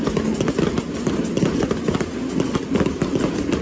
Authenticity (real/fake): real